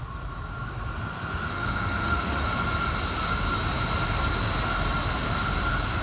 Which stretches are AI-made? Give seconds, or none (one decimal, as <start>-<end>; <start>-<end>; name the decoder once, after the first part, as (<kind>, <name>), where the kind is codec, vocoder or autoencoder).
1.5-2.4 (autoencoder, DAC-VAE)